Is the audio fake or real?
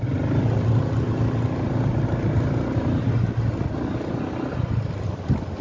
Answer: real